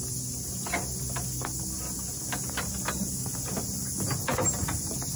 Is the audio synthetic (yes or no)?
no